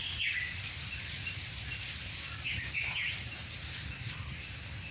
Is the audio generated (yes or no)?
yes